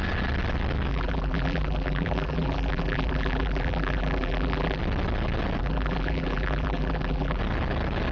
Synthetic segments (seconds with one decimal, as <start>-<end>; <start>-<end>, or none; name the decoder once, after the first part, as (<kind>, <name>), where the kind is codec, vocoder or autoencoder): 0.9-4.8 (vocoder, BigVGAN v2); 5.6-7.4